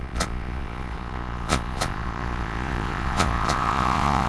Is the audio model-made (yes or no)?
yes